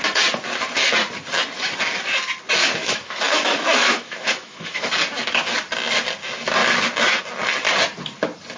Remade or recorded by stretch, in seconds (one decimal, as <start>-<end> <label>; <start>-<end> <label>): 0.0-2.6 recorded; 2.6-4.9 remade; 4.9-8.6 recorded